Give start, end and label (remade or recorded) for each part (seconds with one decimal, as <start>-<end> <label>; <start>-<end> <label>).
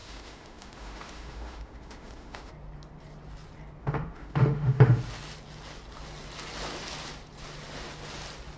0.0-2.5 remade; 2.5-3.8 recorded; 3.8-5.0 remade; 5.0-8.6 recorded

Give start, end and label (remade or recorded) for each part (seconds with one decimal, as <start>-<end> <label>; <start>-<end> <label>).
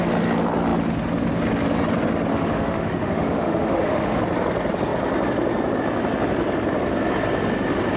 0.0-2.3 recorded; 2.3-4.2 remade; 4.2-8.0 recorded